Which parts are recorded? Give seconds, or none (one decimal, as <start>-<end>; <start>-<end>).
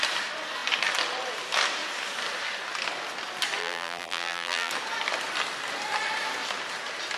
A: 0.0-3.6; 4.7-7.2